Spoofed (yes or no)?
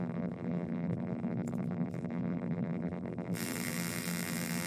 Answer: yes